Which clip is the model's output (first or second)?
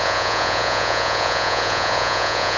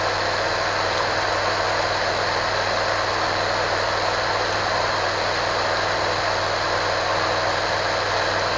first